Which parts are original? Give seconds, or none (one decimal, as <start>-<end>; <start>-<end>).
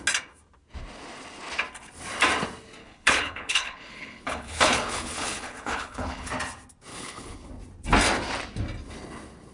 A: 0.0-2.8; 6.3-6.9; 7.5-9.5